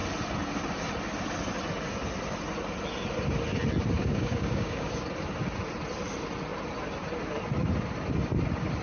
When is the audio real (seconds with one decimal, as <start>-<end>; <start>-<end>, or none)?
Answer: 0.0-4.0; 4.9-8.8